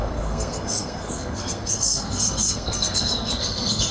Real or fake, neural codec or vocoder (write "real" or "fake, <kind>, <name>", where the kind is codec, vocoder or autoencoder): fake, codec, SNAC